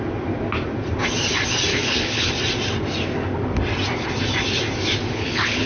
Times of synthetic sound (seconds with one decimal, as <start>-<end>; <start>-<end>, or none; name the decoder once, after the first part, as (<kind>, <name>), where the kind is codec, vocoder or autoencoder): 1.7-2.3 (codec, HILCodec); 5.1-5.7